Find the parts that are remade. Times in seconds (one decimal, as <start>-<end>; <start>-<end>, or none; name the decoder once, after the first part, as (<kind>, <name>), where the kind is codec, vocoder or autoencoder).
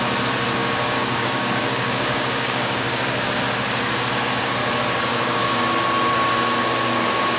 0.6-3.3 (codec, DAC); 5.1-5.6